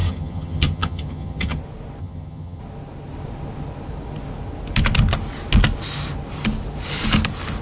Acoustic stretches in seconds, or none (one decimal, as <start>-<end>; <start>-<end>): 1.6-2.0; 2.6-7.6